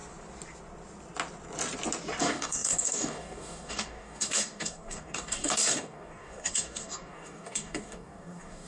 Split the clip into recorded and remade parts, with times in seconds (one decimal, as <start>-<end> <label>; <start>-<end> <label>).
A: 0.0-2.2 recorded; 2.2-8.7 remade